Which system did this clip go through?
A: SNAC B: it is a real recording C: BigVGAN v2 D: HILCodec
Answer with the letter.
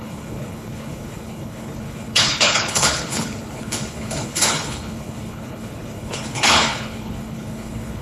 D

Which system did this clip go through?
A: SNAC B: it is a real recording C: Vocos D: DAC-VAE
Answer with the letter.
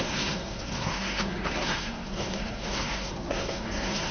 A